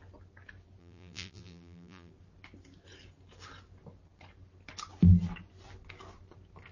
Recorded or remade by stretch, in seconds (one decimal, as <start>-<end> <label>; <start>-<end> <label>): 0.0-0.8 recorded; 0.8-2.1 remade; 2.1-6.7 recorded